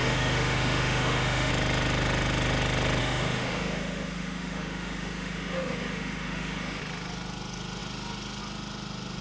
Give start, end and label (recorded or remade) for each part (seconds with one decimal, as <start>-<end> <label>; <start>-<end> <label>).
0.0-1.5 remade; 1.5-3.0 recorded; 3.0-6.8 remade; 6.8-9.2 recorded